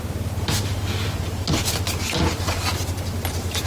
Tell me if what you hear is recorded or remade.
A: recorded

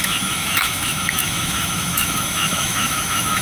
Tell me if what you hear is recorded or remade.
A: remade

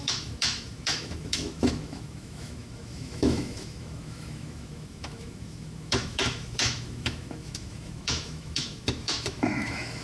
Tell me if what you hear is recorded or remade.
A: remade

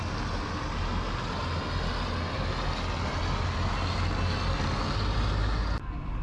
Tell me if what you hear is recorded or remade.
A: recorded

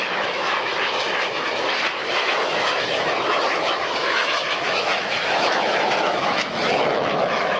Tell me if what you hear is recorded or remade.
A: remade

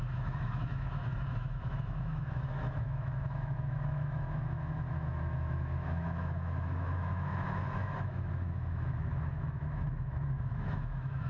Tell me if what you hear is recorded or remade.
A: remade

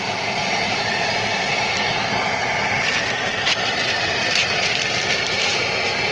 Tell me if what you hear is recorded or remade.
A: recorded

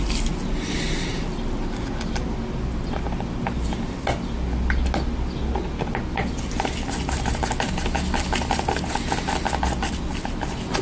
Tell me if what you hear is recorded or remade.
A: recorded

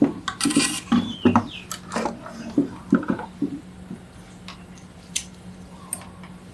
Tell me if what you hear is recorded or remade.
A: recorded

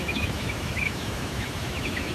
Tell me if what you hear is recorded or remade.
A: remade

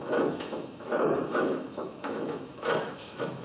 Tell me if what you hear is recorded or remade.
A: remade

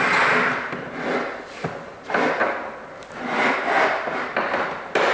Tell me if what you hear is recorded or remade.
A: recorded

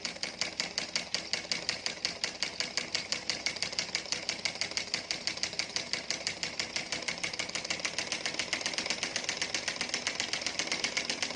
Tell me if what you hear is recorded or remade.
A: recorded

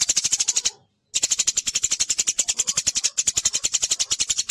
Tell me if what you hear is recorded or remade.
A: recorded